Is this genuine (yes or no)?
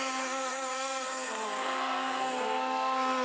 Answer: no